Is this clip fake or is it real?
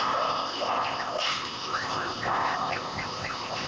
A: fake